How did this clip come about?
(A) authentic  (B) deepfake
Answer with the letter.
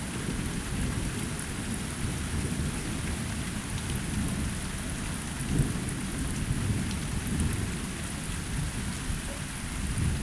A